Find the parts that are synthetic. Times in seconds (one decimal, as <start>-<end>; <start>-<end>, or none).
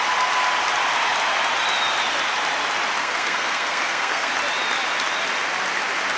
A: 3.0-4.3